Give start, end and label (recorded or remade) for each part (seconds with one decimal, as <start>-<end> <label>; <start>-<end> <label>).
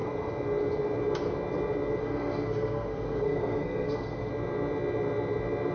0.0-2.0 recorded; 2.0-4.3 remade; 4.3-5.7 recorded